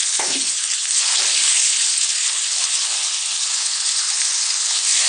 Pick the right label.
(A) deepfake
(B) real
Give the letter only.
A